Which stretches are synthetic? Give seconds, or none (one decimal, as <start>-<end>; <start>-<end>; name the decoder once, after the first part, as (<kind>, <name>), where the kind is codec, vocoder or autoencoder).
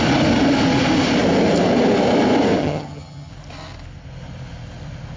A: 2.6-3.3 (vocoder, HiFi-GAN)